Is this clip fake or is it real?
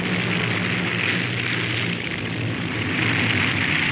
real